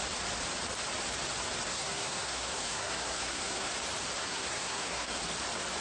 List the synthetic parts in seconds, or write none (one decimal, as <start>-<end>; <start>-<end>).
1.7-3.7; 4.2-5.2